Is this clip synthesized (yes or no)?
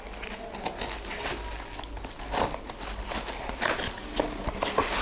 no